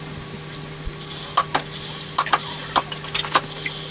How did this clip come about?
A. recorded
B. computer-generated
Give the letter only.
A